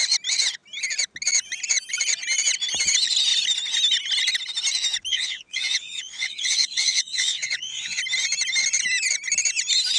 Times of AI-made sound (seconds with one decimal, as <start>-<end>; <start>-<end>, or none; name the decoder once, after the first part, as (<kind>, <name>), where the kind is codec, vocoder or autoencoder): 5.1-8.0 (vocoder, Vocos)